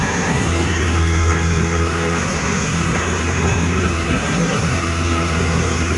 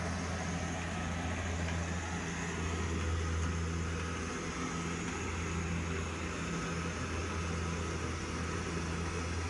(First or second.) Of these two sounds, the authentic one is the second